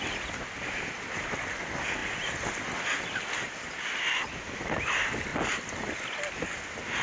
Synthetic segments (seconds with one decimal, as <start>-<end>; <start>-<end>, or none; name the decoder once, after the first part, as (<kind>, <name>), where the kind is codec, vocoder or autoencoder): none